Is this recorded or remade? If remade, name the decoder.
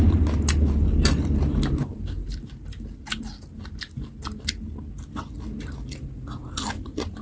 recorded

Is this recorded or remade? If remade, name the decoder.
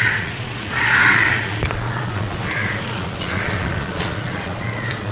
remade, vocoder, Vocos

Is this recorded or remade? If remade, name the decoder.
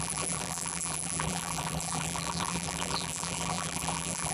remade, vocoder, BigVGAN v2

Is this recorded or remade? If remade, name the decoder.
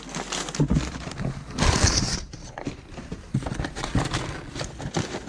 recorded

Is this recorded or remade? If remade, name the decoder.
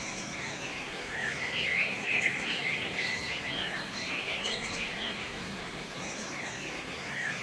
remade, codec, SNAC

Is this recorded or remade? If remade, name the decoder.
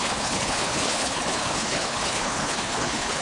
remade, codec, HILCodec